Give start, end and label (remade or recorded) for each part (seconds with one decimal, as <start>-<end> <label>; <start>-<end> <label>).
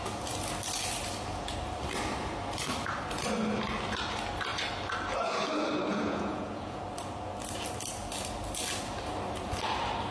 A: 0.0-5.9 recorded; 5.9-6.8 remade; 6.8-10.1 recorded